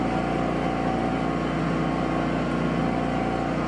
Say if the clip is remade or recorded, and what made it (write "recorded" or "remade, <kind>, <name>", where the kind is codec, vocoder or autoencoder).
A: recorded